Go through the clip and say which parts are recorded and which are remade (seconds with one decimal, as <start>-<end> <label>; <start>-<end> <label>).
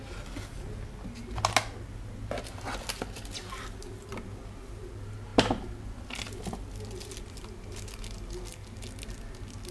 0.0-9.7 recorded